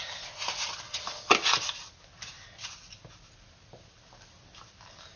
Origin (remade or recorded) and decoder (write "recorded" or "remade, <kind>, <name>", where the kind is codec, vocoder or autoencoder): recorded